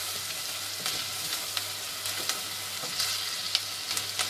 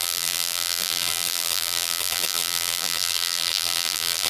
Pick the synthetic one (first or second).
second